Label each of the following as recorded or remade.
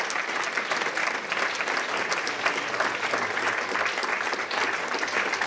recorded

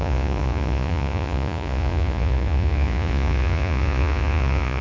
remade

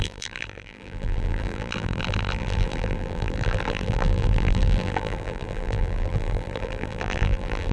remade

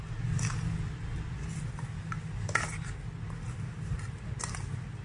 recorded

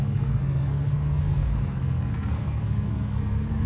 remade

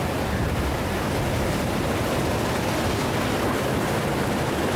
recorded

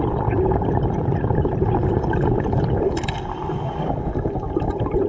recorded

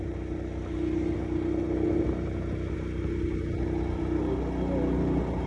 recorded